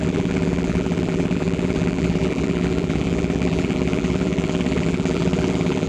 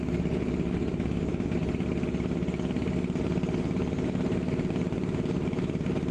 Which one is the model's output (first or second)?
first